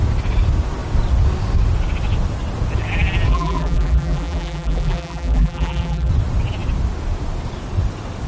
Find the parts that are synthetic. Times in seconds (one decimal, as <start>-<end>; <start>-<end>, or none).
3.3-6.1